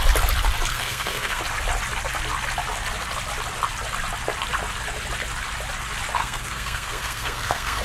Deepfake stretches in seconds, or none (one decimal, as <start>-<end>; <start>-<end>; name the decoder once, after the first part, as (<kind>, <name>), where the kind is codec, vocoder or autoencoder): 0.7-1.4 (codec, SNAC); 6.2-7.8